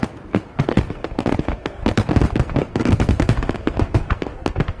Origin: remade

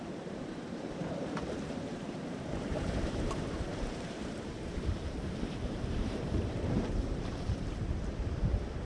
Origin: remade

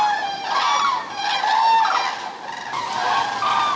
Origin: recorded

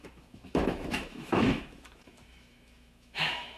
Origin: remade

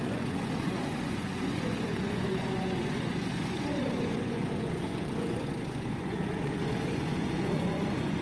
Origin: remade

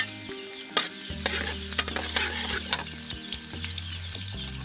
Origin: recorded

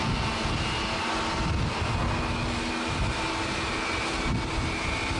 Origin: recorded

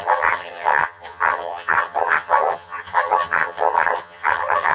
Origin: remade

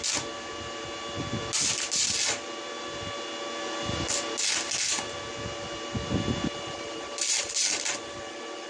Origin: recorded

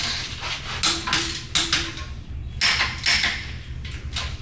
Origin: recorded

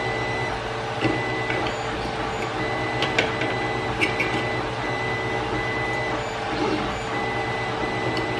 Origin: recorded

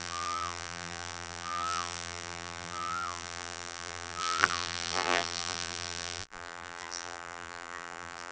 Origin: remade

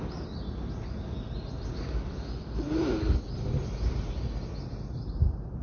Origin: recorded